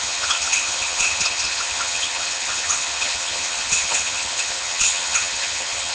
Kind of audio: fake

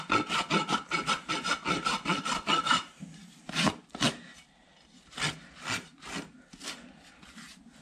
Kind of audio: real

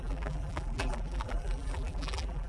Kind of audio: fake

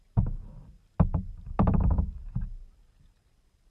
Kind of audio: real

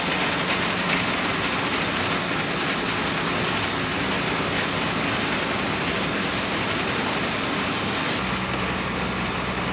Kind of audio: real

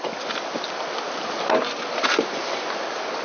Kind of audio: real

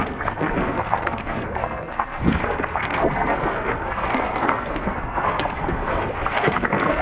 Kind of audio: fake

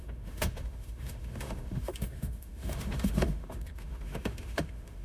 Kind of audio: fake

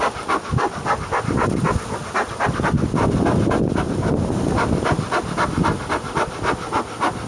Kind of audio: real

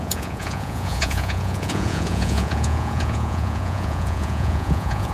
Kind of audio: fake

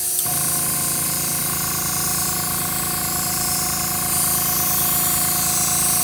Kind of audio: real